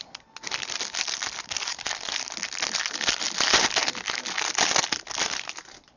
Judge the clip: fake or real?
real